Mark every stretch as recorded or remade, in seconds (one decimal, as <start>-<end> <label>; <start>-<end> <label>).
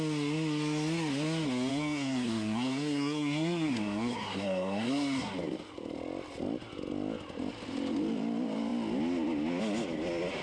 0.0-1.7 recorded; 1.7-5.3 remade; 5.3-10.4 recorded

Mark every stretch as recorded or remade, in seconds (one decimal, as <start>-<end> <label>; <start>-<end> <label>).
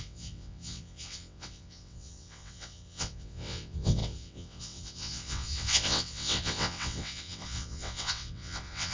0.0-8.9 remade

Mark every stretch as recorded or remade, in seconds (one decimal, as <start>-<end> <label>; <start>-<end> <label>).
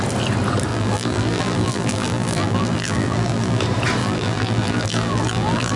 0.0-0.7 recorded; 0.7-3.6 remade; 3.6-4.0 recorded; 4.0-5.8 remade